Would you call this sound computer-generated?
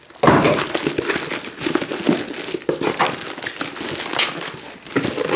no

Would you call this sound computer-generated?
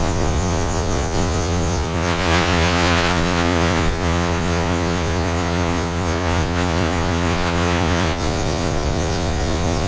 yes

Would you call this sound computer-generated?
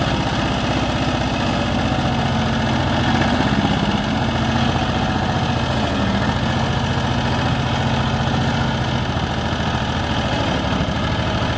no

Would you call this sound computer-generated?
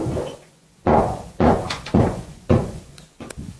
yes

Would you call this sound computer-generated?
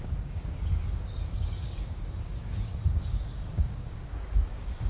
yes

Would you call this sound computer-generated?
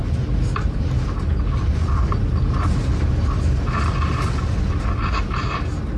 no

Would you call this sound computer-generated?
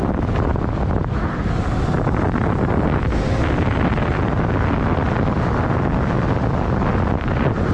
no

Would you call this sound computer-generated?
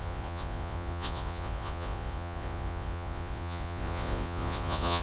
yes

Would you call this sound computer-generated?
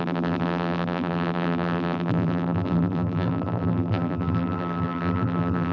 yes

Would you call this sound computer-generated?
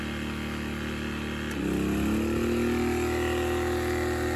no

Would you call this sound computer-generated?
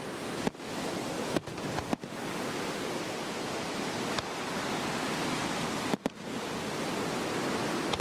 no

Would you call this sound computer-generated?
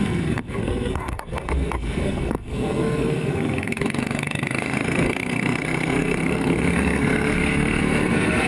yes